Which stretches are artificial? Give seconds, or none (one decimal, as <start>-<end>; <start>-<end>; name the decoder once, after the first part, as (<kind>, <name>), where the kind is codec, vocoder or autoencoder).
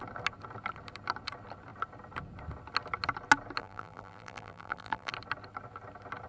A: 3.6-5.1 (vocoder, BigVGAN v2)